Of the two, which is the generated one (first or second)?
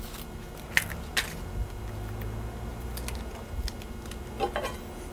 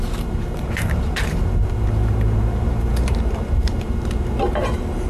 second